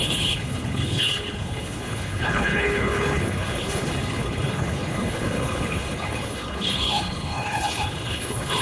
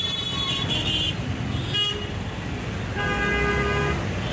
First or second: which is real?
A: second